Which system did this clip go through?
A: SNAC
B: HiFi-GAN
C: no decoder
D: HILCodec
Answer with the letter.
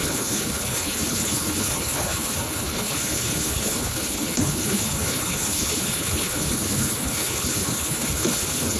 D